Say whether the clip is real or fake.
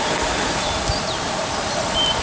real